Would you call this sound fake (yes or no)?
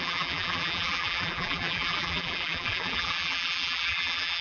yes